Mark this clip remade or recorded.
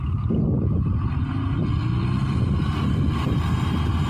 recorded